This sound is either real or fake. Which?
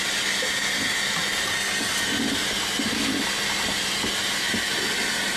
real